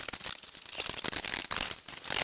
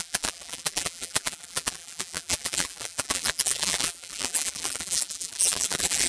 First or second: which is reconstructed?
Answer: second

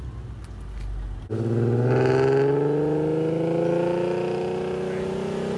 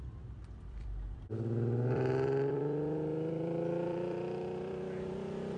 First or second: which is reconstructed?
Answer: second